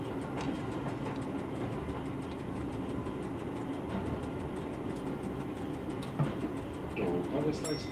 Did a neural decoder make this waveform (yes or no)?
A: no